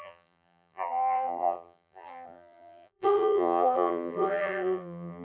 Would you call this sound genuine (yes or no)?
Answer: no